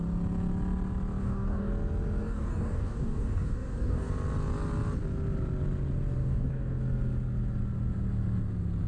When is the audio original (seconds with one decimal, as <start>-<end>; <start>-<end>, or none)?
0.0-1.2; 1.7-2.2; 4.1-6.2; 6.8-8.9